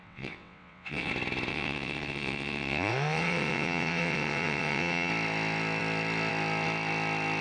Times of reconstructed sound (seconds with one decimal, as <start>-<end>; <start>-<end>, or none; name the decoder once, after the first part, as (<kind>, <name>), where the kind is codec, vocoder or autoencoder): 0.0-1.1 (vocoder, WaveNeXt); 1.5-5.1